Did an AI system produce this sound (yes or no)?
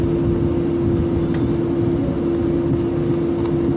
no